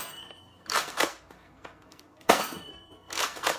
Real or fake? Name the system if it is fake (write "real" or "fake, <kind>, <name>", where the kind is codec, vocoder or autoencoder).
fake, codec, SNAC